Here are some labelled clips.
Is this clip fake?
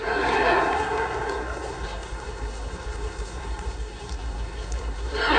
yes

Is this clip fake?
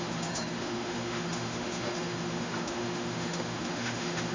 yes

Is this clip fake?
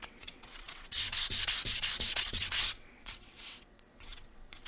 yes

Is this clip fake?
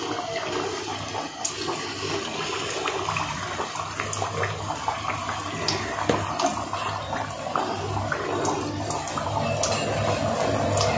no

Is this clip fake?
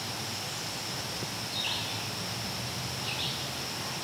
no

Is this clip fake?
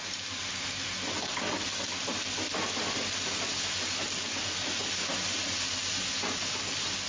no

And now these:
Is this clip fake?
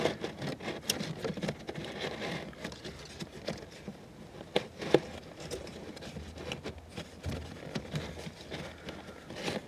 no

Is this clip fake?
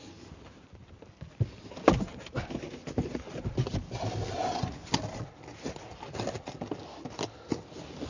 no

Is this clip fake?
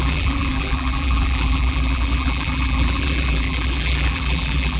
yes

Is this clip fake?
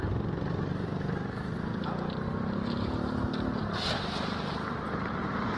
no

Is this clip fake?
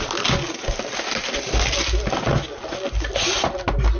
no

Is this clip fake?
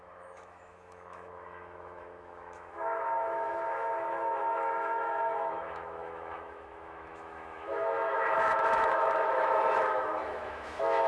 yes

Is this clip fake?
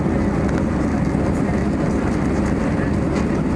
no